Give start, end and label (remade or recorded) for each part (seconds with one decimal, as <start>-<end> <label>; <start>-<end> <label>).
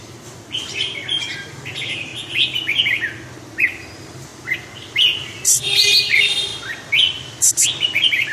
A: 0.0-2.1 remade; 2.1-3.6 recorded; 3.6-4.3 remade; 4.3-6.1 recorded; 6.1-6.5 remade; 6.5-7.5 recorded; 7.5-8.3 remade